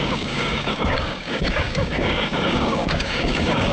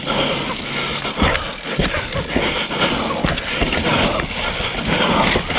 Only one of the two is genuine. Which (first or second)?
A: second